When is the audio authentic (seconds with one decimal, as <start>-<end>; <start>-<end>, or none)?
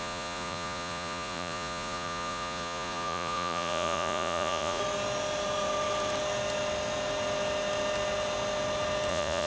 4.8-9.1